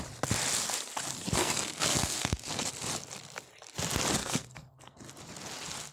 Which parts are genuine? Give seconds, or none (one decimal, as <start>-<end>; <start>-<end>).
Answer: 0.0-1.4; 2.7-4.2; 5.0-5.9